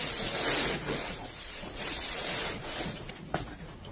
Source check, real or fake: fake